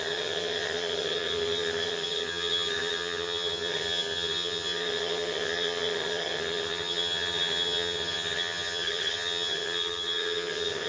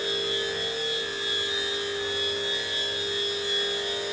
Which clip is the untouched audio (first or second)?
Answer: second